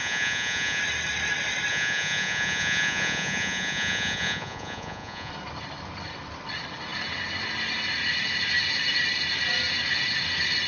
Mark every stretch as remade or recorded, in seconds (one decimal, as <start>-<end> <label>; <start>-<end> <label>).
0.0-0.8 remade; 0.8-1.7 recorded; 1.7-5.3 remade; 5.3-10.7 recorded